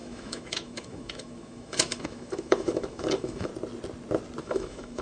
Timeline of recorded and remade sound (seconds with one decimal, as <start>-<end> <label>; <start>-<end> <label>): 0.0-3.5 remade; 3.5-4.4 recorded; 4.4-5.0 remade